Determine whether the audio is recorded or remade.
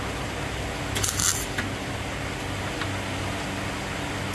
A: recorded